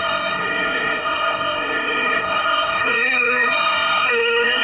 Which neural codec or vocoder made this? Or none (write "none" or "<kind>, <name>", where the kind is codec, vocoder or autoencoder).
codec, SNAC